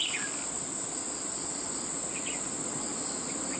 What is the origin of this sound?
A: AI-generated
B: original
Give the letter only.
B